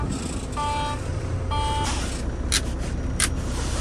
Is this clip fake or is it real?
real